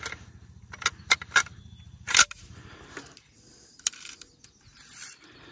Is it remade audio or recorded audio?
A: recorded